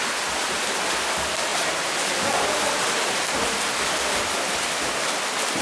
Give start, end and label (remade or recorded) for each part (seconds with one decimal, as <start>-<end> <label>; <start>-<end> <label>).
0.0-5.6 recorded